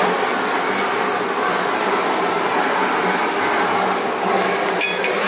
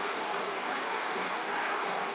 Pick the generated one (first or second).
second